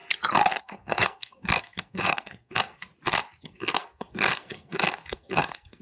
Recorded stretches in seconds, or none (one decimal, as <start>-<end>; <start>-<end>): 0.0-0.6; 2.9-3.4